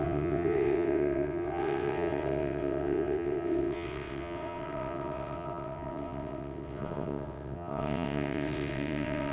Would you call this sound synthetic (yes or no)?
yes